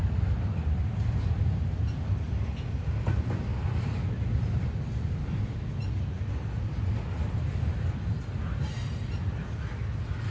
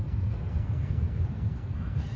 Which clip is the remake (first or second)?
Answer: second